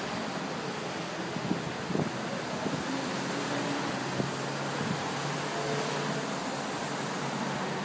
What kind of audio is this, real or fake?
real